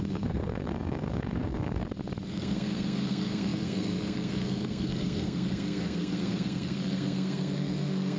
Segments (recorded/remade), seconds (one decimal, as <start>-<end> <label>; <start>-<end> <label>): 0.0-1.8 remade; 1.8-2.3 recorded; 2.3-8.2 remade